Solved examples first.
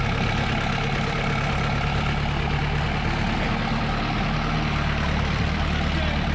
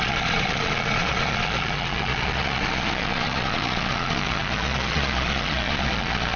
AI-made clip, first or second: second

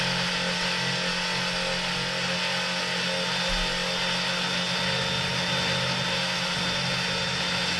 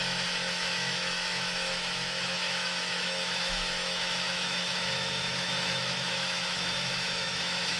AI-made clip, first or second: second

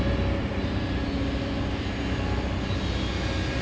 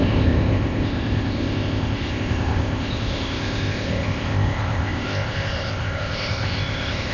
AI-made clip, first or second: second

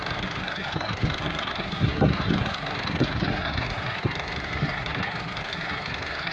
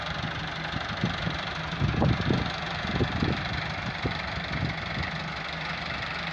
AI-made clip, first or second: first